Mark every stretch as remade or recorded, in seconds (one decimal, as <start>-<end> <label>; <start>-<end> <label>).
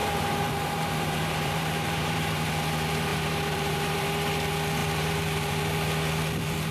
0.0-2.5 remade; 2.5-3.1 recorded; 3.1-4.1 remade; 4.1-4.8 recorded; 4.8-5.6 remade; 5.6-6.7 recorded